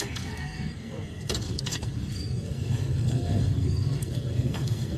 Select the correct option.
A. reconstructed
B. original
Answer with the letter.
A